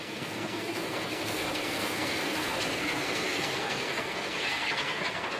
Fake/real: fake